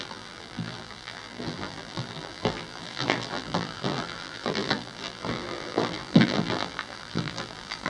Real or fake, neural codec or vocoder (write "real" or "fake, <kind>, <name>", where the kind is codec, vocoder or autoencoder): fake, vocoder, BigVGAN v2